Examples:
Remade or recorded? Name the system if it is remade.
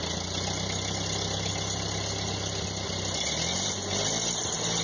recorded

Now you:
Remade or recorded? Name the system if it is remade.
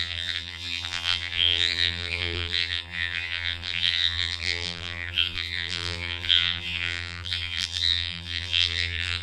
remade, vocoder, BigVGAN v2